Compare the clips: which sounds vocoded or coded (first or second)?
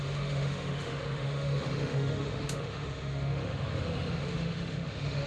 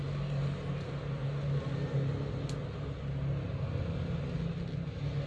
first